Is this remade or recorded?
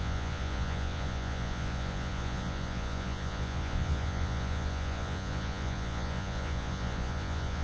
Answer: remade